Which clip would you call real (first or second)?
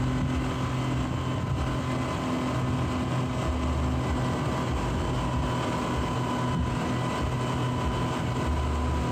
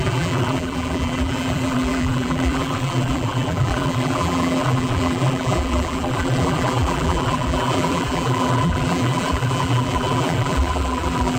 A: first